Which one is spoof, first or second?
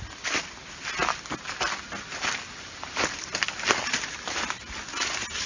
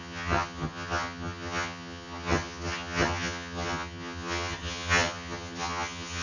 second